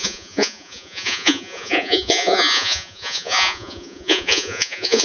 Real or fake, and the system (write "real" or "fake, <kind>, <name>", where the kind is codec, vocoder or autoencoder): fake, vocoder, Vocos